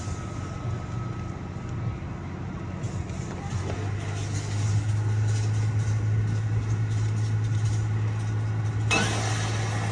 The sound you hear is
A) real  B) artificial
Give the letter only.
A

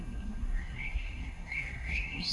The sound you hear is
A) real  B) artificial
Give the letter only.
B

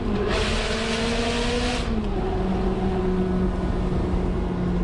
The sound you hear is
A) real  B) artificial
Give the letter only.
A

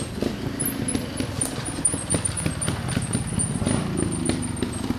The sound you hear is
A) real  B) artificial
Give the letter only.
A